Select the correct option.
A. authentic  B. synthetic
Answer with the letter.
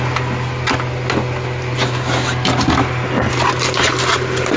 A